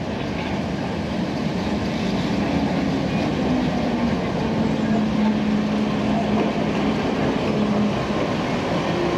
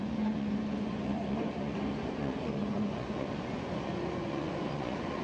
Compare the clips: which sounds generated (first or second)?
second